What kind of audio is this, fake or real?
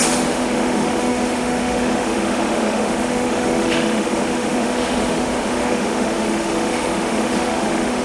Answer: fake